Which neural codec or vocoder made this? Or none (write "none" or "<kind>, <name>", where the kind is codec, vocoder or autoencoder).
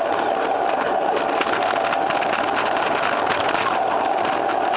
none